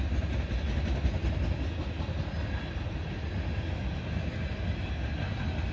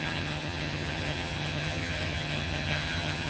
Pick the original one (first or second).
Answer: first